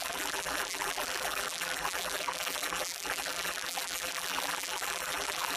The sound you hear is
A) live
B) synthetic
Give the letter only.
B